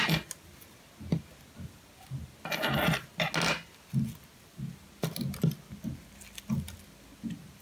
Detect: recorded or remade recorded